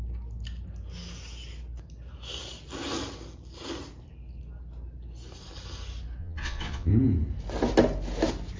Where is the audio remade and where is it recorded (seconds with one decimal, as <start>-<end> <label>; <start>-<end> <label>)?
0.0-6.2 recorded; 6.2-6.9 remade; 6.9-8.6 recorded